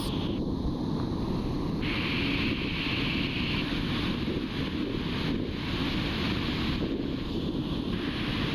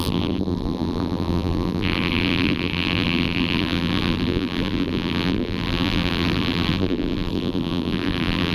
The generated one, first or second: second